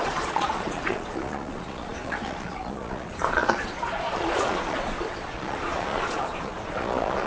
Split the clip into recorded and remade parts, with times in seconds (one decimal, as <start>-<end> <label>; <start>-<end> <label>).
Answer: 0.0-7.3 remade